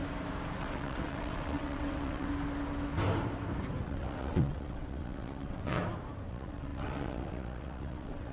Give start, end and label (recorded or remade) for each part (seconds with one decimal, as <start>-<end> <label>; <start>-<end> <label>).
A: 0.0-0.6 recorded; 0.6-2.3 remade; 2.3-3.8 recorded; 3.8-5.8 remade; 5.8-6.3 recorded; 6.3-8.3 remade